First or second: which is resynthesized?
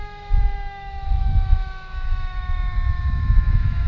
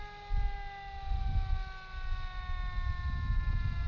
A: first